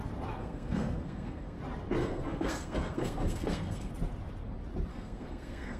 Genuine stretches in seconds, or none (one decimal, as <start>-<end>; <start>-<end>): 0.0-0.4; 1.6-2.0; 3.9-4.9